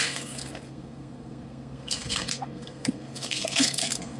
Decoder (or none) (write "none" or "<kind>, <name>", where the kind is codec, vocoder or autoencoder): codec, SNAC